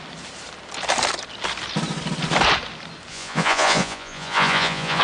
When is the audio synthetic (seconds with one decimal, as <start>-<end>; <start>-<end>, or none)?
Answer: 3.1-5.0